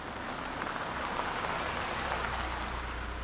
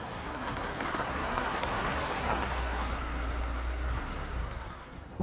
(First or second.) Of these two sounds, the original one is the first